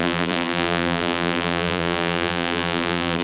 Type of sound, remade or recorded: remade